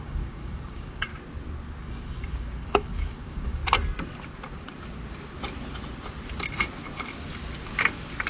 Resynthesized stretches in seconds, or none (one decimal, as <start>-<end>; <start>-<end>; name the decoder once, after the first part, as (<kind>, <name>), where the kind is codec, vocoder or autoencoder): 0.0-1.1 (codec, DAC); 1.8-3.6

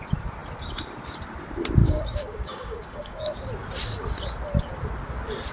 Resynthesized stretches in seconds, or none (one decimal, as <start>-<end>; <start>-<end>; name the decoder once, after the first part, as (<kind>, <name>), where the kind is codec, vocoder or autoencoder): 1.8-3.5 (codec, DAC)

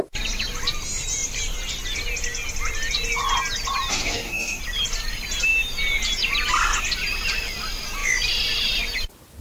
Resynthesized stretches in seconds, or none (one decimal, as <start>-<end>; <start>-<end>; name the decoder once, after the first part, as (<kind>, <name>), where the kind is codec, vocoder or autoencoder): 3.9-4.6 (codec, DAC)

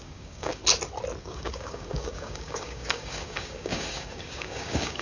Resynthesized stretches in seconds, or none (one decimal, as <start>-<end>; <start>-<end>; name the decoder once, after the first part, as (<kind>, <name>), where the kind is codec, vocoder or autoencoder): 0.0-0.6 (codec, DAC); 1.2-5.0

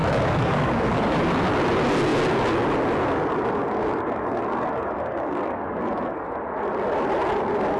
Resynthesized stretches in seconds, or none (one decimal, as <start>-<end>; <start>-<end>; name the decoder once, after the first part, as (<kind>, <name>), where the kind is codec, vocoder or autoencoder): 0.0-1.2 (codec, DAC); 3.6-5.8

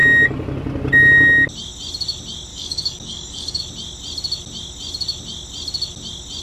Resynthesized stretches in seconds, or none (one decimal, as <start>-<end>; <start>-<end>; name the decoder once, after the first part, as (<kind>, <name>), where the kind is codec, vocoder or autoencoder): 2.5-3.6 (codec, DAC)